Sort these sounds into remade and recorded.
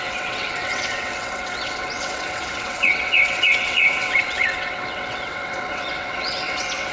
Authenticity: remade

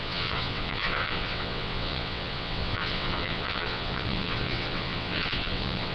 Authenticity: remade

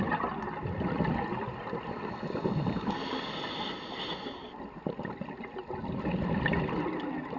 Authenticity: recorded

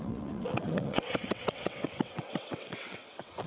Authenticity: remade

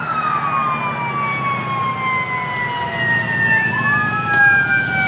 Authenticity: recorded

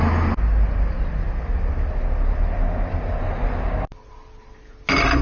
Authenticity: recorded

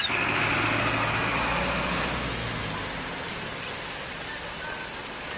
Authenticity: recorded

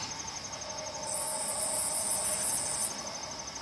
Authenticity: recorded